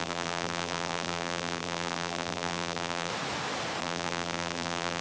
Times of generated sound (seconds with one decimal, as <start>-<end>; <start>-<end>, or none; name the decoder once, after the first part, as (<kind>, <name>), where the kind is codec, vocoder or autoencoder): 0.0-3.1 (vocoder, BigVGAN v2); 3.8-5.0